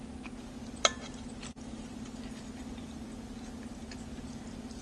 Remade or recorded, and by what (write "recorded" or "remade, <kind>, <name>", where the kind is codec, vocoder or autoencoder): remade, vocoder, BigVGAN v2